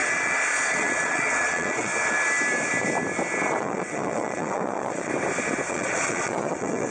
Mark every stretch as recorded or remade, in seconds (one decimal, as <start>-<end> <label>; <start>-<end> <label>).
0.0-1.9 remade; 1.9-3.6 recorded; 3.6-5.1 remade; 5.1-5.7 recorded; 5.7-6.9 remade